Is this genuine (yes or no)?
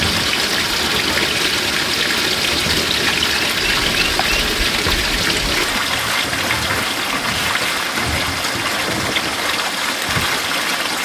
yes